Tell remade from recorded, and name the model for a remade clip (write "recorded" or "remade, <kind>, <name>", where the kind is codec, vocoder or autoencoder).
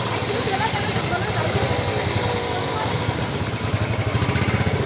recorded